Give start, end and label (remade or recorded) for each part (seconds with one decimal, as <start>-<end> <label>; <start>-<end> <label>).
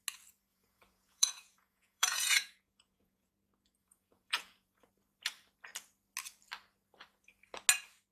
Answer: 0.0-0.5 recorded; 0.5-3.3 remade; 3.3-3.8 recorded; 3.8-4.9 remade; 4.9-8.1 recorded